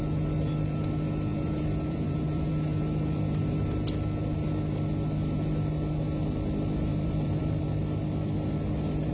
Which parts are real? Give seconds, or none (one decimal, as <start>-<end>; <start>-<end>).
0.0-1.3; 2.5-6.9; 7.6-9.1